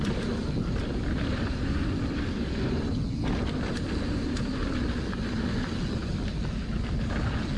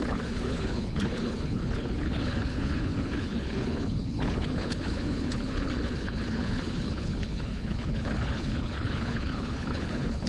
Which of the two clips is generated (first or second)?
second